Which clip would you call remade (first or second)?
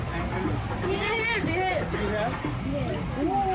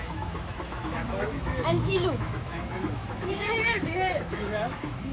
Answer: second